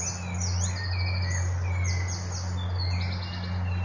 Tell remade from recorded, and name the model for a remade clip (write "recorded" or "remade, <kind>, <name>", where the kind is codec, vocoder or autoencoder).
recorded